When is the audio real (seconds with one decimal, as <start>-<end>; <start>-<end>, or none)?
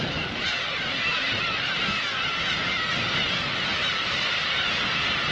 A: 0.0-1.1; 1.8-3.8; 4.5-5.3